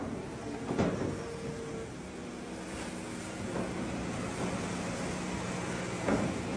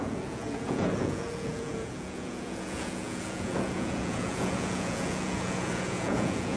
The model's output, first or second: second